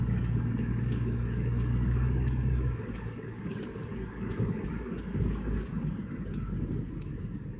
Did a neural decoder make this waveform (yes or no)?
yes